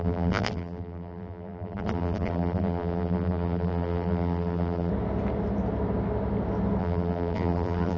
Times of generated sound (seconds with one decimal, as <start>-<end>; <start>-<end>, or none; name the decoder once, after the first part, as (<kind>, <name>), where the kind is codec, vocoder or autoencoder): 0.0-4.9 (vocoder, BigVGAN v2); 6.8-8.0